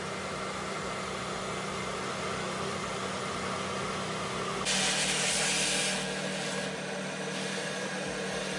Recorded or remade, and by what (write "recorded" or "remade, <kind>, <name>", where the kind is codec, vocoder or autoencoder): recorded